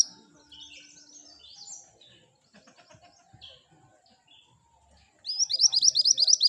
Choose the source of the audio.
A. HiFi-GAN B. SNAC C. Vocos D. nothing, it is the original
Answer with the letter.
D